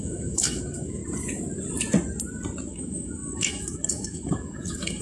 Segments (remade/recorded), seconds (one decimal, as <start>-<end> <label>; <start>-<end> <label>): 0.0-1.0 remade; 1.0-2.7 recorded; 2.7-5.0 remade